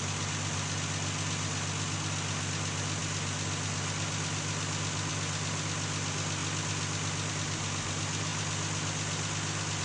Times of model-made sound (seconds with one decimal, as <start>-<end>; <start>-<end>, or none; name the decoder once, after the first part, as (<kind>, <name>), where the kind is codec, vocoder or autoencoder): none